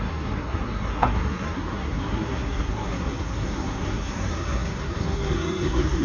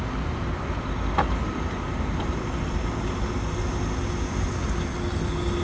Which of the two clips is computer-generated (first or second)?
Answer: first